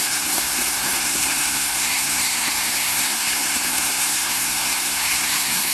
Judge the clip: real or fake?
fake